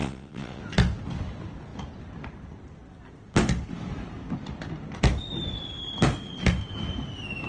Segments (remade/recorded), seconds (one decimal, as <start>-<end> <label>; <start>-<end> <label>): 0.0-0.6 remade; 0.6-7.5 recorded